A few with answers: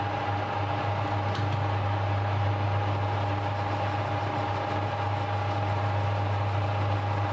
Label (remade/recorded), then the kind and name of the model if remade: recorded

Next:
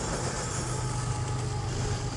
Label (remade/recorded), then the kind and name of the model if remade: recorded